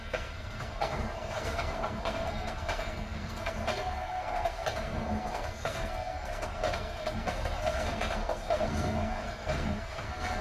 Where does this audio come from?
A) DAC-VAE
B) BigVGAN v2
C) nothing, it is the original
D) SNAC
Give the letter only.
D